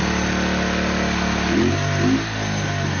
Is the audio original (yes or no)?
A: yes